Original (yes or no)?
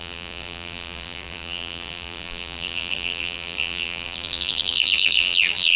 no